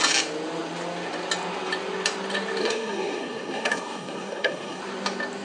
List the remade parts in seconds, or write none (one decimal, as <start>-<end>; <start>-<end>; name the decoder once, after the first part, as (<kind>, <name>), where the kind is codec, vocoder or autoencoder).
2.6-4.8 (codec, SNAC)